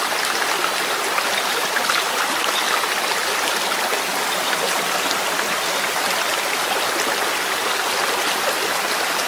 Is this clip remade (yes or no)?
no